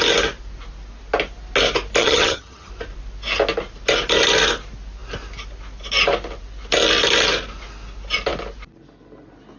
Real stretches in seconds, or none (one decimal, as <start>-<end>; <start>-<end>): 0.0-2.0; 2.7-9.6